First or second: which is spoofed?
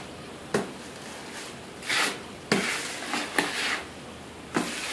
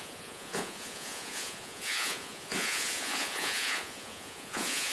second